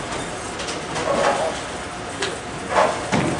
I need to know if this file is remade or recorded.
recorded